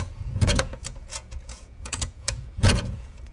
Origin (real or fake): fake